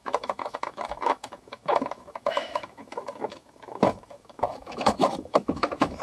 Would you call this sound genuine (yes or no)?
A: no